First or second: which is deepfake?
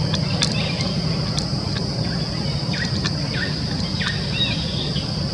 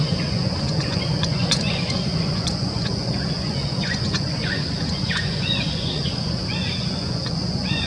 second